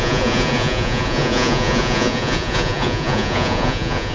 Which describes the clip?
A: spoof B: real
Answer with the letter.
A